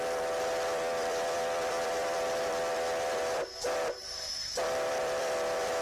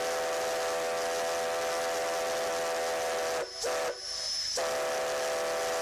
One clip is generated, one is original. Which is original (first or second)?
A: second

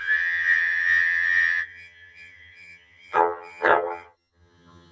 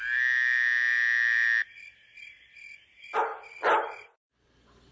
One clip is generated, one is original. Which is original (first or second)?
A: second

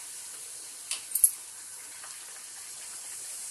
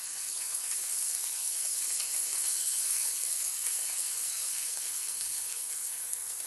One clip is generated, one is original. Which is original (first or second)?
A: first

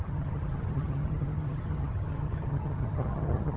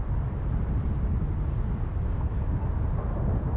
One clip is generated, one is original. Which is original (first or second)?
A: second